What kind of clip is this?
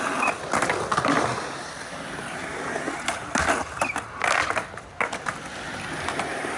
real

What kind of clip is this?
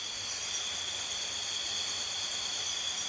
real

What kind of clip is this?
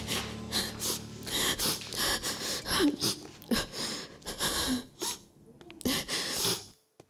real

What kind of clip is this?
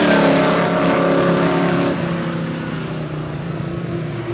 real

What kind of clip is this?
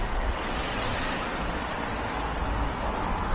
real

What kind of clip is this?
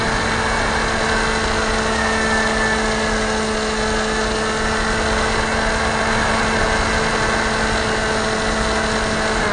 real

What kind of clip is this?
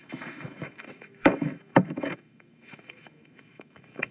fake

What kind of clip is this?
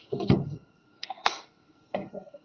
fake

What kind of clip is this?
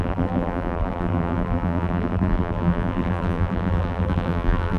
fake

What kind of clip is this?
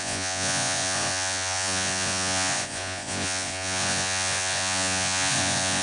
fake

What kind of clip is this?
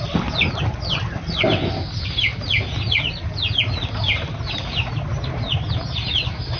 real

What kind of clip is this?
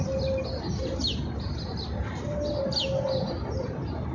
real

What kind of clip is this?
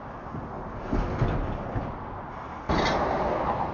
real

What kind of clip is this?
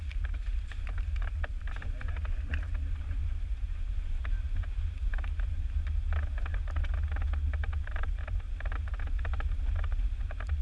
real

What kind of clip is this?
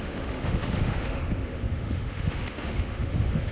fake